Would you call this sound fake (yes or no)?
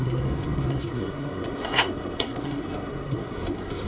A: yes